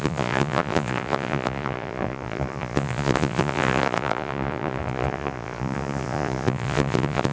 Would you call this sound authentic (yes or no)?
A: no